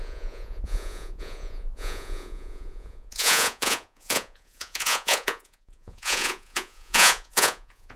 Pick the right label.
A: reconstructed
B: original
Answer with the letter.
A